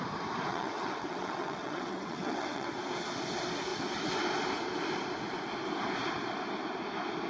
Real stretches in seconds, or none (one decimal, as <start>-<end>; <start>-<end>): 0.0-0.5; 2.7-7.3